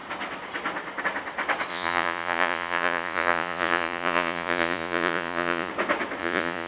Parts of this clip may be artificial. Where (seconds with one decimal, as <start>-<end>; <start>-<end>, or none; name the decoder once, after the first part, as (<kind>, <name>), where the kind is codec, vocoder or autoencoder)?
1.7-5.7 (vocoder, Vocos); 6.2-6.7